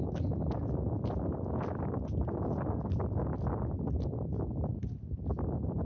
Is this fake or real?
real